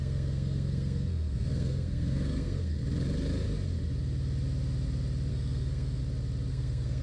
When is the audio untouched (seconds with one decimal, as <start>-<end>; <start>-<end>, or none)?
2.8-5.3; 6.0-6.5